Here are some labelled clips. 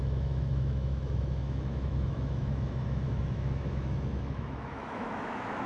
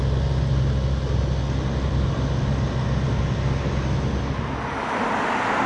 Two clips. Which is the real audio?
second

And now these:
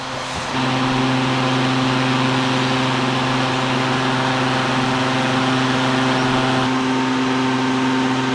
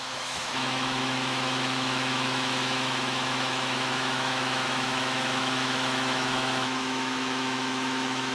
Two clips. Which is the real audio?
first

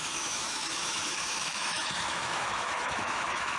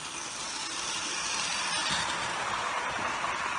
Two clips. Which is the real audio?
second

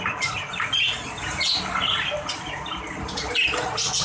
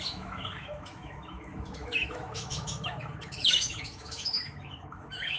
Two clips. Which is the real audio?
first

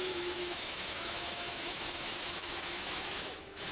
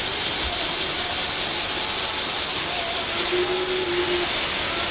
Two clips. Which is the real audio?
second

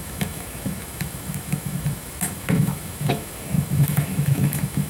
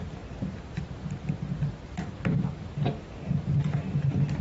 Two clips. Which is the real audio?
second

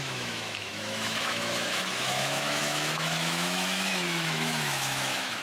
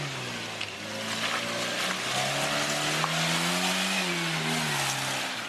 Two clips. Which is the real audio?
second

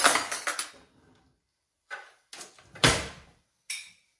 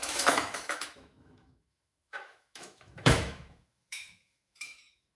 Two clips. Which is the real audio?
first